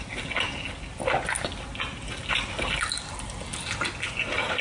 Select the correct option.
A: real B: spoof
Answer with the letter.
A